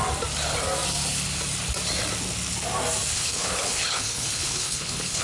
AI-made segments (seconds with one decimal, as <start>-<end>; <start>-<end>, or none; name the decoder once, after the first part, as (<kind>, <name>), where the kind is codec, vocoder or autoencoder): 3.1-5.2 (codec, HILCodec)